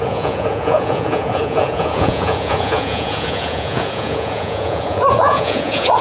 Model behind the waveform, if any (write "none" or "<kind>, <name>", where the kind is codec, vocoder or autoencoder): vocoder, Vocos